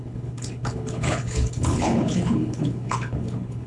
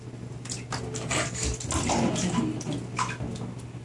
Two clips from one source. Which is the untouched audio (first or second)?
second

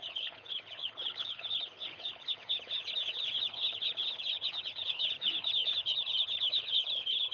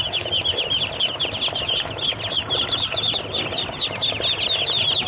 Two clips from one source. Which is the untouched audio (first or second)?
second